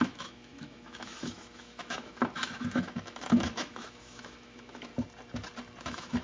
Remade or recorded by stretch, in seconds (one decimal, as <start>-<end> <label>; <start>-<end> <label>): 0.0-4.9 remade; 4.9-5.8 recorded; 5.8-6.2 remade